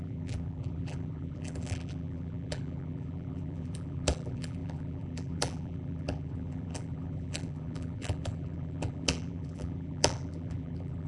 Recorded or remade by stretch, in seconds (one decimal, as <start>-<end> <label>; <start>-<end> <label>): 0.0-11.1 remade